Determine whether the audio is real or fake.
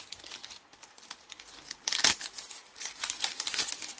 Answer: fake